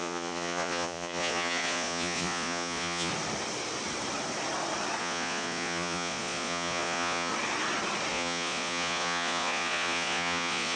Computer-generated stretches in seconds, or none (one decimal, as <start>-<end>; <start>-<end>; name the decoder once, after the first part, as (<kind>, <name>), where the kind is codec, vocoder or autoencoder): 0.0-3.1 (vocoder, Vocos); 5.0-7.3; 8.1-10.8